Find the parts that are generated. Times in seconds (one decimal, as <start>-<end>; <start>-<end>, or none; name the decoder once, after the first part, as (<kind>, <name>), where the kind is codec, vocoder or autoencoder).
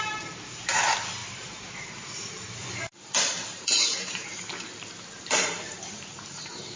0.0-4.2 (vocoder, BigVGAN v2); 5.2-6.8